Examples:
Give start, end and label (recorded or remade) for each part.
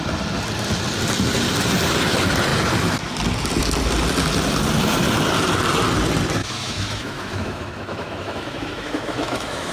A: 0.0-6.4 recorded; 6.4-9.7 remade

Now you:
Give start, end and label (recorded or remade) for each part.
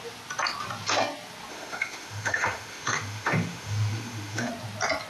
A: 0.0-1.5 recorded; 1.5-4.5 remade; 4.5-5.1 recorded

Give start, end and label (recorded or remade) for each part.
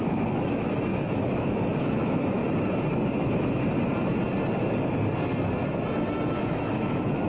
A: 0.0-2.4 remade; 2.4-6.3 recorded; 6.3-7.3 remade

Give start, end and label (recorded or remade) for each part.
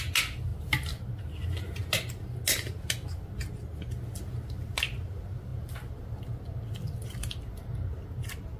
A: 0.0-8.6 recorded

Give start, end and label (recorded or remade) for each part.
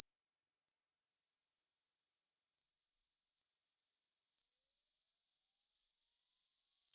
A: 0.0-2.6 recorded; 2.6-3.4 remade; 3.4-4.4 recorded; 4.4-6.9 remade